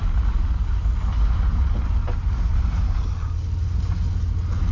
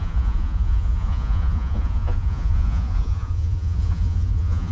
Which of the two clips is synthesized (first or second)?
second